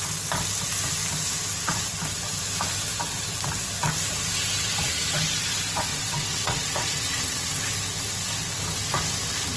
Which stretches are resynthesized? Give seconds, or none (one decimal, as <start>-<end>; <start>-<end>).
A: 5.9-7.6